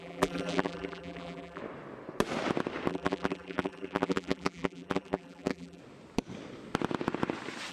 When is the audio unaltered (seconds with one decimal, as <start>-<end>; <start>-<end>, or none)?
1.6-2.9; 5.8-7.7